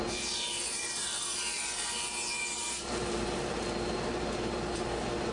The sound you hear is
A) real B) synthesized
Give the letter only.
B